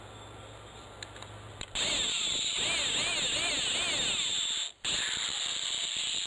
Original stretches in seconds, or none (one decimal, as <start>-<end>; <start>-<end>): 0.0-6.3